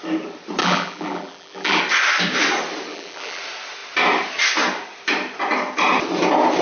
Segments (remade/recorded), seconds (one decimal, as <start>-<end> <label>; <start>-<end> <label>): 0.0-0.6 recorded; 0.6-1.8 remade; 1.8-2.9 recorded; 2.9-3.4 remade; 3.4-6.6 recorded